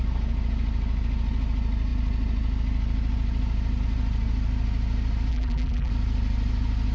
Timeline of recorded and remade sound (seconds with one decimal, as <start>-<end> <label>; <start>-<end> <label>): 0.0-5.3 recorded; 5.3-5.9 remade; 5.9-6.9 recorded